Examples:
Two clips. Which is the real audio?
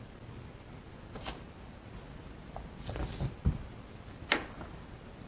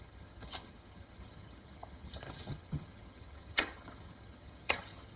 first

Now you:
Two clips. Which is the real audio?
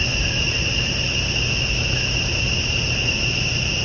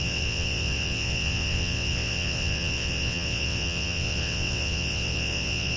first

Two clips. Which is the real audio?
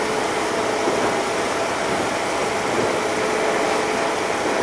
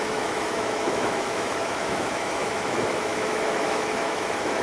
first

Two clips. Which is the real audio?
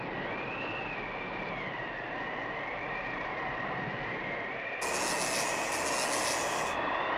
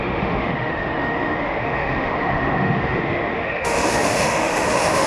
first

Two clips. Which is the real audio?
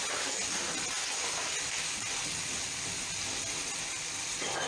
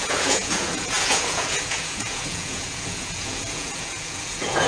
first